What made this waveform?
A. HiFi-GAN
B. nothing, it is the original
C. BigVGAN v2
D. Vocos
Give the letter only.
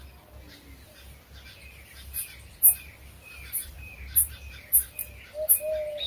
B